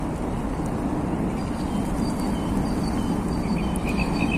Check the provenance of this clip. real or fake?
real